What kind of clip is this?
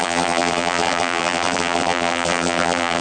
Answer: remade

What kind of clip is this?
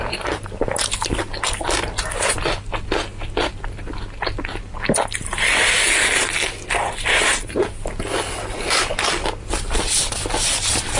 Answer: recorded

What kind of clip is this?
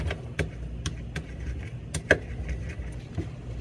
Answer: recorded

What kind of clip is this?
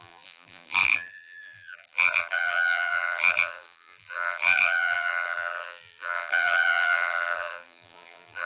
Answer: remade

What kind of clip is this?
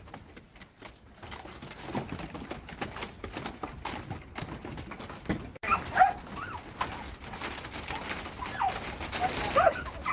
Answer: recorded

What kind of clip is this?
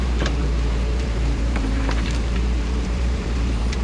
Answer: remade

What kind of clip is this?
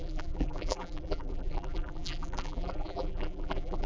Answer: remade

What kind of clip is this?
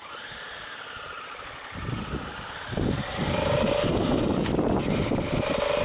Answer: recorded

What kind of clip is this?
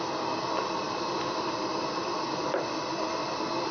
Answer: remade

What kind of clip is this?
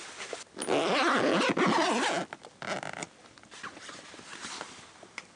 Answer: recorded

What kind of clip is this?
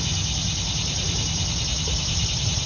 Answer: recorded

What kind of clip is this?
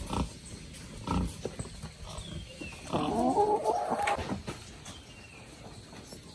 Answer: recorded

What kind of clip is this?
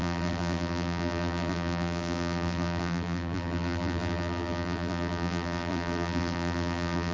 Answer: remade